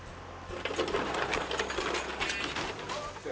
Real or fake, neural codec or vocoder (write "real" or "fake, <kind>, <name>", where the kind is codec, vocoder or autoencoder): real